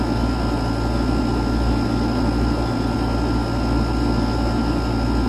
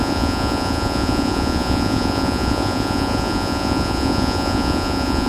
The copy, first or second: second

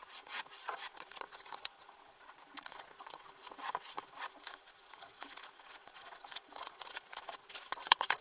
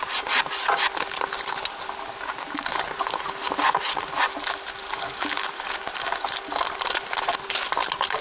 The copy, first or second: first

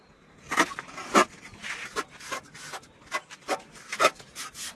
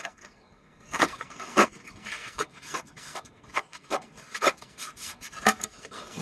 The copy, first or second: second